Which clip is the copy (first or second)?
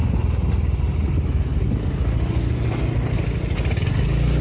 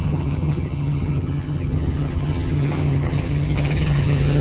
second